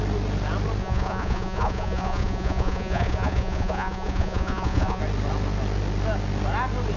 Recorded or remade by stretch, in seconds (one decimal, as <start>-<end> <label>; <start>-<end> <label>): 0.0-0.8 recorded; 0.8-5.0 remade; 5.0-7.0 recorded